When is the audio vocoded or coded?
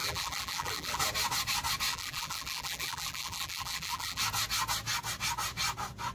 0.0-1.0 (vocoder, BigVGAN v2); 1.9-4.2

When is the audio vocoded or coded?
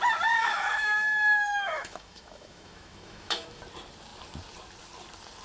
0.4-3.6 (autoencoder, DAC-VAE)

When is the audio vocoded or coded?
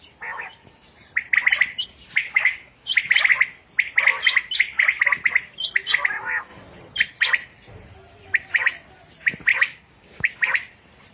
2.2-2.9 (codec, DAC); 9.5-10.3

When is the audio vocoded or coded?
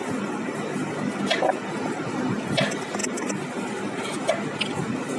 none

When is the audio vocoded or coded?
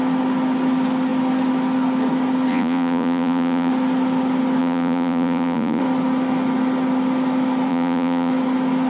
2.5-3.7 (vocoder, Vocos); 4.6-5.8; 7.7-8.3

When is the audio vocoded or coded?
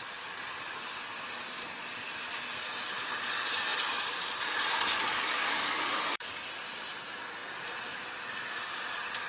3.7-4.2 (codec, DAC); 4.9-6.5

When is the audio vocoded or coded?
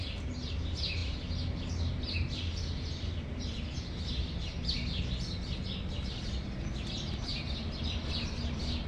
none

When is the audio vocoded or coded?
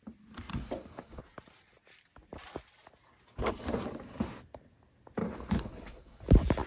0.5-1.2 (codec, HILCodec); 5.2-6.2